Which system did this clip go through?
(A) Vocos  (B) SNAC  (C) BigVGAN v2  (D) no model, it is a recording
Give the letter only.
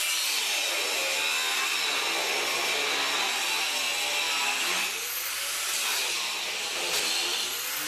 D